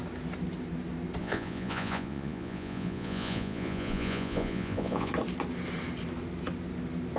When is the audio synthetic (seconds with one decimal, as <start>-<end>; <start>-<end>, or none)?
1.2-5.1